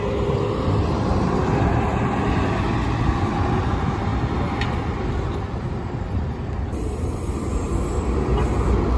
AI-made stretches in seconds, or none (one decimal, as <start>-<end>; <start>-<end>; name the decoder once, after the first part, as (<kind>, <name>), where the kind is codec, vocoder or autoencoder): none